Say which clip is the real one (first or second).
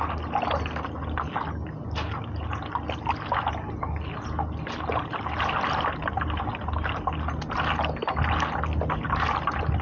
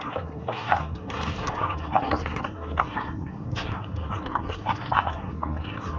first